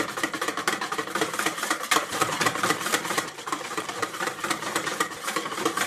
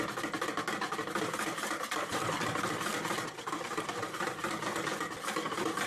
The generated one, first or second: first